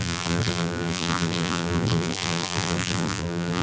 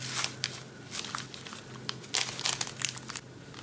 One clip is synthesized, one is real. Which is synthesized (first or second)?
first